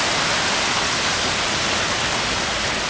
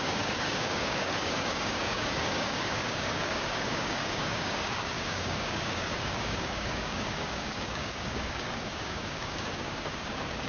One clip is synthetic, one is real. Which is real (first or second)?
first